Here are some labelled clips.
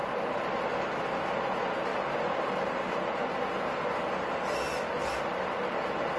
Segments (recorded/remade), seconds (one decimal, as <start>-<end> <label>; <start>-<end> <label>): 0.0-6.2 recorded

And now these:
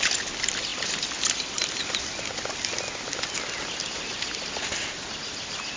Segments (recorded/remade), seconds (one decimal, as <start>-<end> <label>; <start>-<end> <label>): 0.0-5.8 recorded

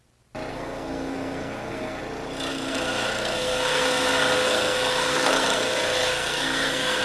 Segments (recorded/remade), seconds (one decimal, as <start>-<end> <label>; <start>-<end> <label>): 0.0-0.5 recorded; 0.5-2.0 remade; 2.0-2.5 recorded; 2.5-7.0 remade

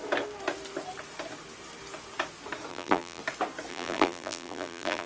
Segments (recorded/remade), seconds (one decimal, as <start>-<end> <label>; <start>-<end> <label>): 0.0-2.7 recorded; 2.7-3.2 remade; 3.2-3.7 recorded; 3.7-5.1 remade

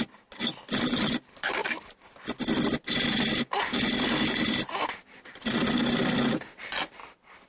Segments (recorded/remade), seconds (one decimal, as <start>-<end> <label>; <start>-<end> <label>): 0.0-7.5 recorded

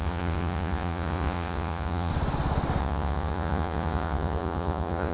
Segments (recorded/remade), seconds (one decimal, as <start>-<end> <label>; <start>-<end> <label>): 0.0-2.1 remade; 2.1-2.8 recorded; 2.8-5.1 remade

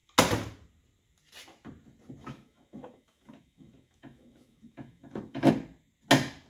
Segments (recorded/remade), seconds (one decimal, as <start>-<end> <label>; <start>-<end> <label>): 0.0-2.2 recorded; 2.2-5.5 remade; 5.5-6.5 recorded

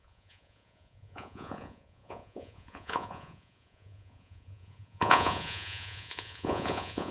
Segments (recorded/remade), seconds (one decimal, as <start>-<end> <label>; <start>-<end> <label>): 0.0-7.1 remade